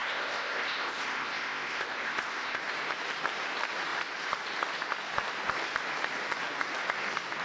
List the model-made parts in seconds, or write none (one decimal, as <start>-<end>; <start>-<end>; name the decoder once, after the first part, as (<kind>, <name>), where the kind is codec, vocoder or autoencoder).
0.0-2.6 (codec, ZipCodec)